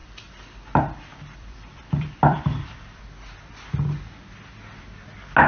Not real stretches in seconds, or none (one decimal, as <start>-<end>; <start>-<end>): 0.0-3.0